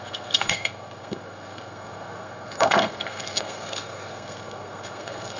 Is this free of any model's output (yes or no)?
no